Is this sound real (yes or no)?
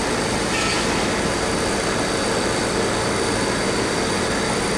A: yes